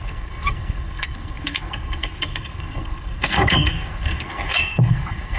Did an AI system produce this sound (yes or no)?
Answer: yes